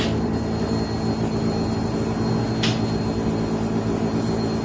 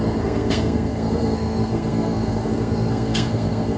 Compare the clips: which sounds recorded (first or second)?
first